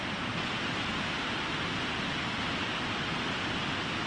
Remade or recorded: recorded